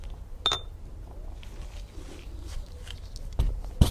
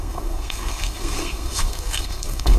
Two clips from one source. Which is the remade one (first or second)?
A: second